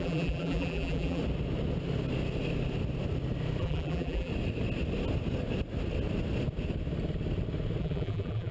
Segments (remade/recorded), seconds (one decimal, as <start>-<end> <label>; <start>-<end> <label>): 0.0-1.2 remade; 1.2-3.6 recorded; 3.6-4.3 remade; 4.3-7.8 recorded; 7.8-8.5 remade